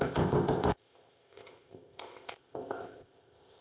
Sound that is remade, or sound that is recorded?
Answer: remade